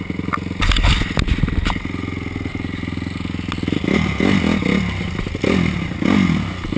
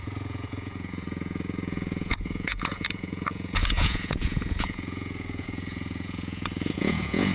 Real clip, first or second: first